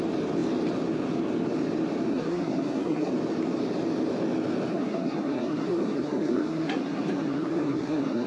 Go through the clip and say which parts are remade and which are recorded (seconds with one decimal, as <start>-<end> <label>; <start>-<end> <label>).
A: 0.0-2.1 recorded; 2.1-3.1 remade; 3.1-4.7 recorded; 4.7-8.3 remade